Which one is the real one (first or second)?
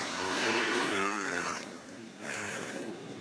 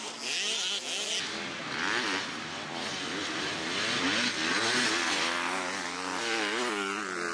second